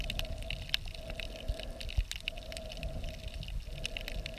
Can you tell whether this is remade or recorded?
recorded